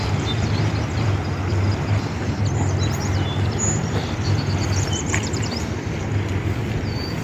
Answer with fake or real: fake